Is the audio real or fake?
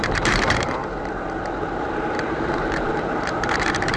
fake